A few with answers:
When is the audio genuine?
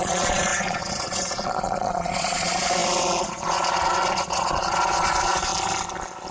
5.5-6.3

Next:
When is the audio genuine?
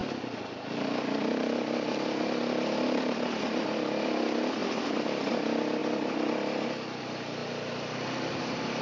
0.0-8.8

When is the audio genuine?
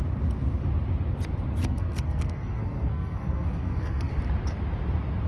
0.0-1.6; 4.2-5.3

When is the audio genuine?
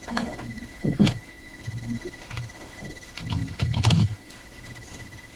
none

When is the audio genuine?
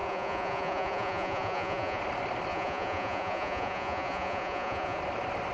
2.0-2.5; 5.0-5.5